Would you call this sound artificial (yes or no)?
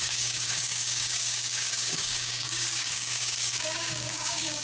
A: yes